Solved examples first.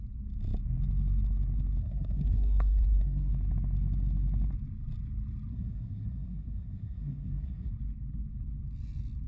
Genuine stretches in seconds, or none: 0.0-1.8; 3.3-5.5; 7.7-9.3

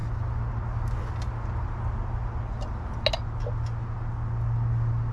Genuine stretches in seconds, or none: 0.0-5.1

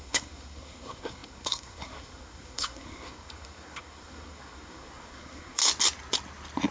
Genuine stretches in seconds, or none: 5.6-6.7

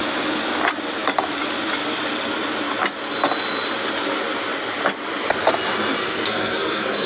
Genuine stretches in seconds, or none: 0.0-6.0

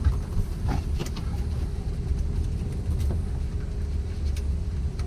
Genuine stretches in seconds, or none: 0.0-5.1